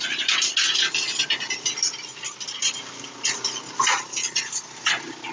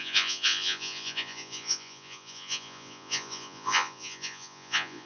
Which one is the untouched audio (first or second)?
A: first